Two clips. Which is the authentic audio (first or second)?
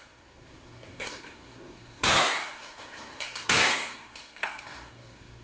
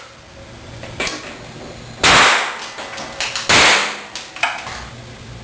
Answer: second